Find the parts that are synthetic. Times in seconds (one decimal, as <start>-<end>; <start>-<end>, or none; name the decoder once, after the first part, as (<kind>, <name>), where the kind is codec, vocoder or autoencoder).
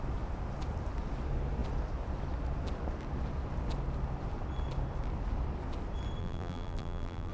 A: 6.2-7.3 (vocoder, BigVGAN v2)